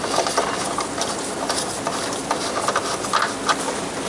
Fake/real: real